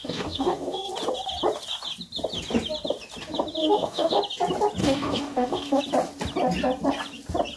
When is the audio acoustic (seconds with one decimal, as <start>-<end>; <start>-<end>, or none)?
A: 0.9-3.6; 4.2-4.8; 5.8-7.6